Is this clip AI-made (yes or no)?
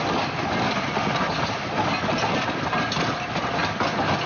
no